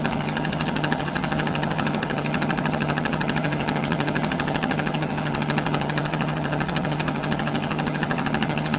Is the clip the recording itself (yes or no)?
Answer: no